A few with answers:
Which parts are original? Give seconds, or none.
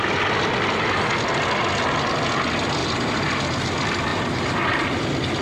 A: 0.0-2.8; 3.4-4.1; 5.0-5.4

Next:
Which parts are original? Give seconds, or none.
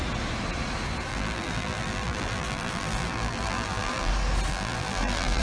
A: 0.0-1.1; 4.1-4.5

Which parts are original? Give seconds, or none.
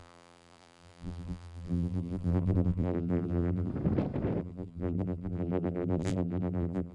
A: 3.7-4.4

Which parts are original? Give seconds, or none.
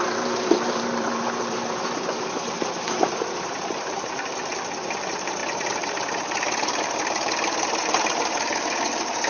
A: none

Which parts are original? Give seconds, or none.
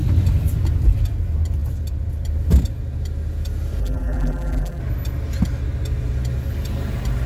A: 0.0-3.8; 4.8-7.3